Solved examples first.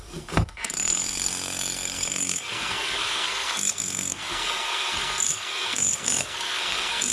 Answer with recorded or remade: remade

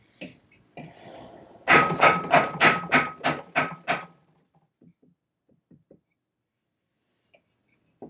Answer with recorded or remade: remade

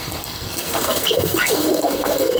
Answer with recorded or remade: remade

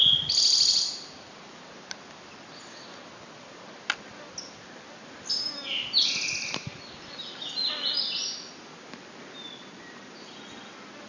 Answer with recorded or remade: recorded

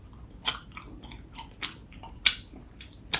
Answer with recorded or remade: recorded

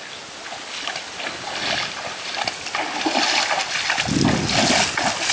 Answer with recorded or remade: recorded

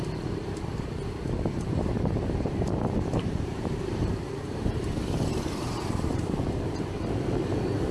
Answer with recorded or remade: remade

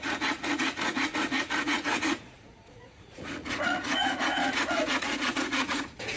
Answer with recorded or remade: remade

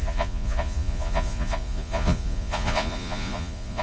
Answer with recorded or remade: remade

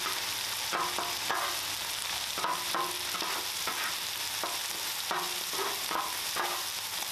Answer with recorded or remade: recorded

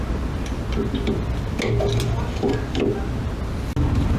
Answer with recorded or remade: recorded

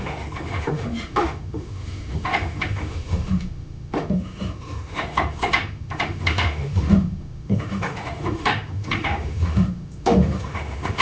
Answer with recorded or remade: remade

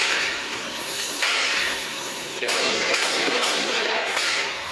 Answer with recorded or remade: remade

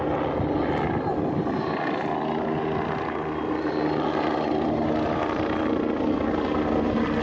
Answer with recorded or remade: recorded